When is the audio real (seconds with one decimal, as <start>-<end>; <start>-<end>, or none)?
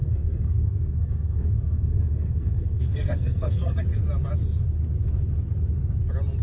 3.8-6.4